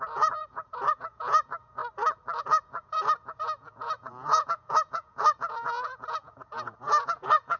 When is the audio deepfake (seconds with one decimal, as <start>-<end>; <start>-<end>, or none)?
0.0-1.8; 2.4-7.6